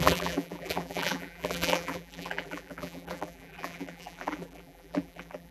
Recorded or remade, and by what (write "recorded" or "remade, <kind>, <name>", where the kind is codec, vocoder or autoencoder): remade, vocoder, BigVGAN v2